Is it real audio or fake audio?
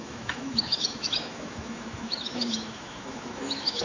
fake